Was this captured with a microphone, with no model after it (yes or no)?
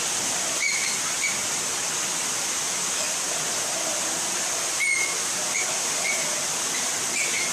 yes